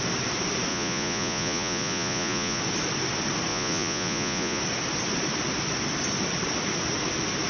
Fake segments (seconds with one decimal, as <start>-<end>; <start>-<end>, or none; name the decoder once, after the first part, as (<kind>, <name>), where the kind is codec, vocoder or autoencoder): 0.7-2.6 (vocoder, Vocos); 3.5-4.6